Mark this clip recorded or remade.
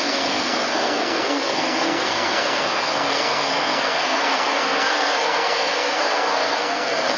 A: remade